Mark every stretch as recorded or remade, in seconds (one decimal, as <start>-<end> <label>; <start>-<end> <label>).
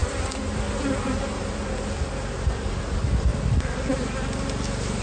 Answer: 0.0-3.3 recorded; 3.3-3.9 remade; 3.9-5.0 recorded